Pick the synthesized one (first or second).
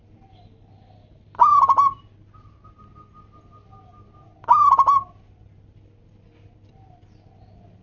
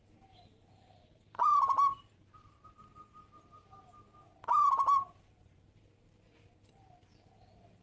second